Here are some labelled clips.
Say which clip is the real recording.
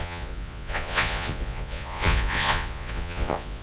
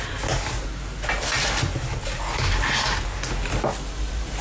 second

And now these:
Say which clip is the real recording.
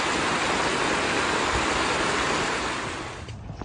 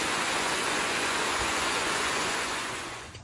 first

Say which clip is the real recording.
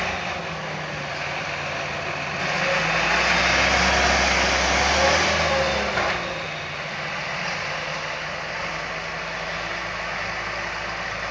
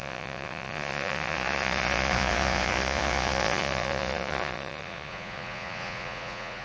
first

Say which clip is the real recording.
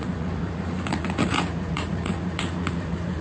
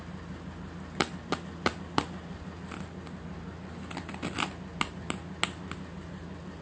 second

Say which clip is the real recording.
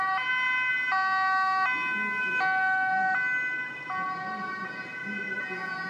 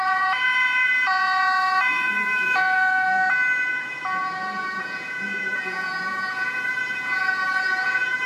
first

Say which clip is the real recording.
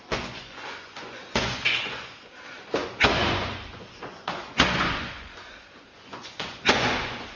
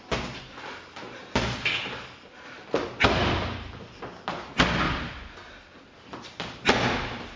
second